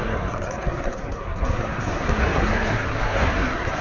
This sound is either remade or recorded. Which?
remade